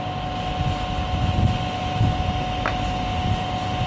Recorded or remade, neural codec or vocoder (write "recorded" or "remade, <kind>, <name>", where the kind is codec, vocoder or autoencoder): recorded